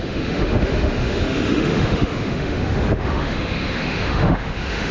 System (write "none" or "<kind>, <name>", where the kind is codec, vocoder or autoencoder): autoencoder, DAC-VAE